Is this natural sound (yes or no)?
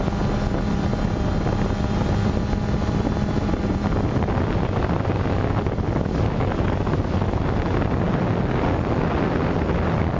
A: yes